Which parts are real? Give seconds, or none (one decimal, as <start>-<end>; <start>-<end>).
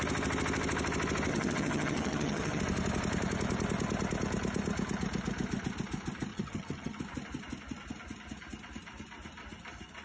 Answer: 0.0-1.3; 2.6-6.3; 7.0-10.0